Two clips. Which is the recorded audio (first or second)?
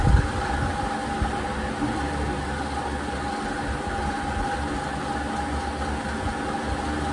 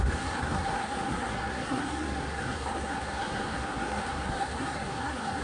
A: first